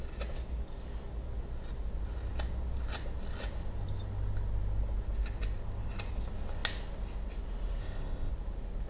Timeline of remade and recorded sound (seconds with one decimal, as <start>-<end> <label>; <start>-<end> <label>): 0.0-7.8 recorded; 7.8-8.3 remade; 8.3-8.9 recorded